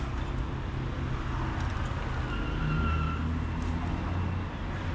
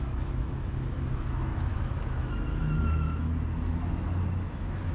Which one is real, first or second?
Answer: first